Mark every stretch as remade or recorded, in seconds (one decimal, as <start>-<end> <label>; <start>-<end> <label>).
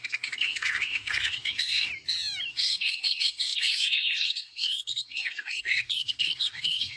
0.0-1.9 remade; 1.9-2.5 recorded; 2.5-7.0 remade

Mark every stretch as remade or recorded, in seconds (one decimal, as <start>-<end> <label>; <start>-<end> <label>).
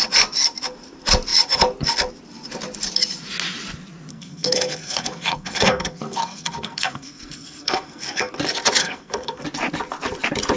0.0-4.1 recorded; 4.1-8.3 remade; 8.3-8.8 recorded; 8.8-9.4 remade; 9.4-10.6 recorded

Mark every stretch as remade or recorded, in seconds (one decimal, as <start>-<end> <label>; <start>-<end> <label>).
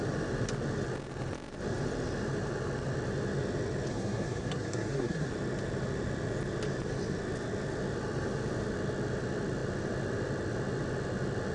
0.0-3.9 recorded; 3.9-5.3 remade; 5.3-11.5 recorded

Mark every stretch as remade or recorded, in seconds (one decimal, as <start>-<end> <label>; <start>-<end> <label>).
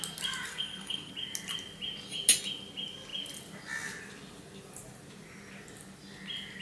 0.0-0.5 recorded; 0.5-1.1 remade; 1.1-6.6 recorded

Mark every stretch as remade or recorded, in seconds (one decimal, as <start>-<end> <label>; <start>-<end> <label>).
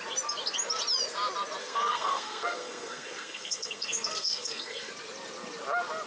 0.0-1.6 recorded; 1.6-4.9 remade; 4.9-6.1 recorded